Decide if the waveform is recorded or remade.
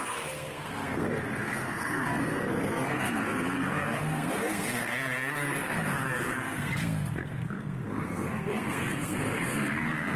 remade